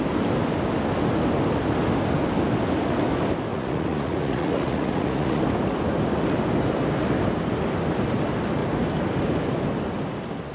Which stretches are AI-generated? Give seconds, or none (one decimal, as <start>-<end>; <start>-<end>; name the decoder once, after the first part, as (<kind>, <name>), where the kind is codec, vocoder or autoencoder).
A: 3.5-5.4 (vocoder, Vocos)